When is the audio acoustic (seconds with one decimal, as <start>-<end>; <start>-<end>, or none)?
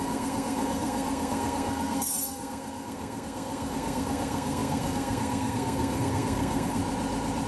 6.8-7.5